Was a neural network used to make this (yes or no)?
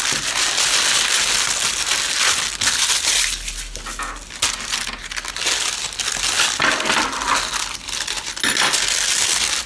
no